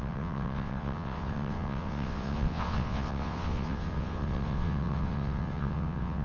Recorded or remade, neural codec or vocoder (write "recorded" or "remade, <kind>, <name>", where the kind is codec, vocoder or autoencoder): remade, vocoder, WaveNeXt